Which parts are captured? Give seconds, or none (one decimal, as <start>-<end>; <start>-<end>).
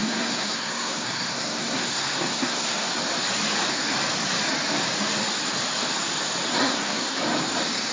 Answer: 2.9-6.6; 7.2-7.9